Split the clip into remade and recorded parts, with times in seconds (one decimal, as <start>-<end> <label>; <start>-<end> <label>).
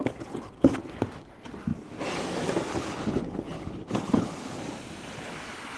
0.0-2.7 recorded; 2.7-4.6 remade; 4.6-5.8 recorded